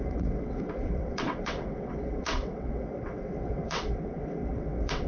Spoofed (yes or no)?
yes